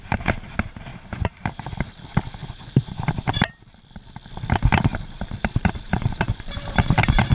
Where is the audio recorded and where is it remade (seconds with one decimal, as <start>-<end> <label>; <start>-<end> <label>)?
0.0-0.9 recorded; 0.9-2.0 remade; 2.0-2.4 recorded; 2.4-3.7 remade; 3.7-4.9 recorded; 4.9-7.3 remade